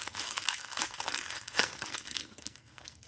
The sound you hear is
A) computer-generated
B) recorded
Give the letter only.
A